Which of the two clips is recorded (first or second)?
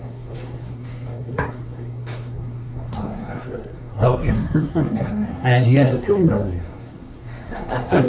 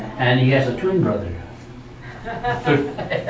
second